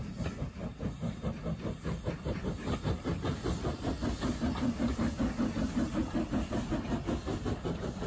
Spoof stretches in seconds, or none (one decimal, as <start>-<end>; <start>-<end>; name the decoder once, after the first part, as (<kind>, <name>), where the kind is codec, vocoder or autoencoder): none